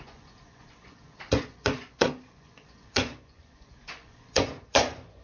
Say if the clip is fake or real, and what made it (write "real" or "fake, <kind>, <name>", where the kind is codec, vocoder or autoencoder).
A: fake, vocoder, Vocos